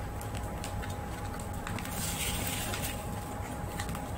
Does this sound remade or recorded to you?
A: recorded